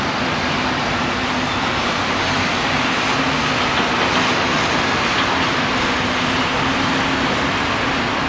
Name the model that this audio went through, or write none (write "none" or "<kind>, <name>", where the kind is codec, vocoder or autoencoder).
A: none